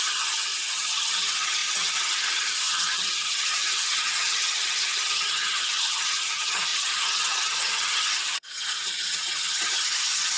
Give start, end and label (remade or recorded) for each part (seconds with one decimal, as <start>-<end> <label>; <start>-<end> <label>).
0.0-10.4 remade